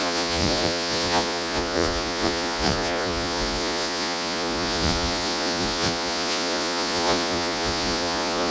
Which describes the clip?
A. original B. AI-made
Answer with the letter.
B